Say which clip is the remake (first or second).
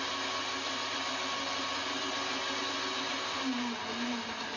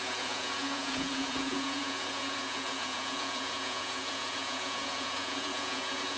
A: second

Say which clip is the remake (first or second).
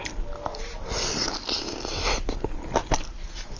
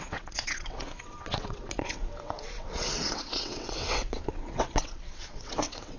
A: second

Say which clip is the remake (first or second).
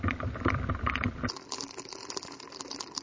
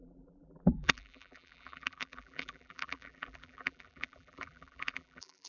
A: second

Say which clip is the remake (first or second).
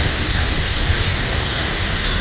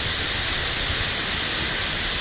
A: first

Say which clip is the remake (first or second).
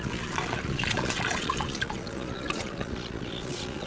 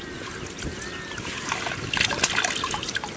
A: first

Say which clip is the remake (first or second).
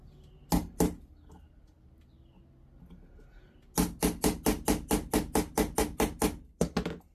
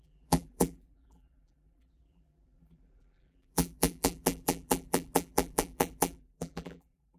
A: second